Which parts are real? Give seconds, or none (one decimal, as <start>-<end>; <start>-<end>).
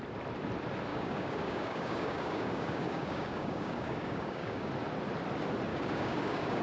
0.0-0.9; 4.7-5.7